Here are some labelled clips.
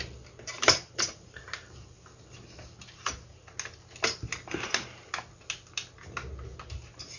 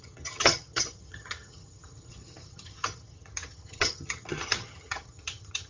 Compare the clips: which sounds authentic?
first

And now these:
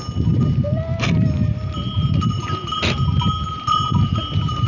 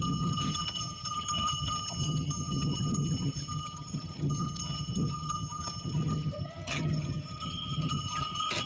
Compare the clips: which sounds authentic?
first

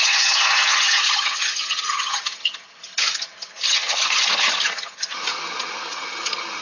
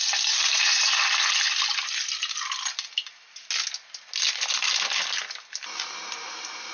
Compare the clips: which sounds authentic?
second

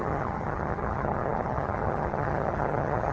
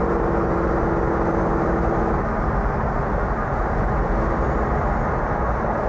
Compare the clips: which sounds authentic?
second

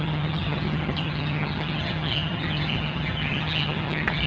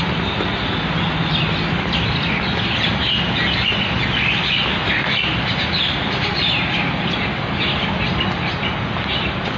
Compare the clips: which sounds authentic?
second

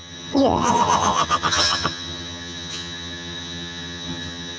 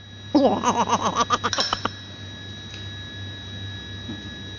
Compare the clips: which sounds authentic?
second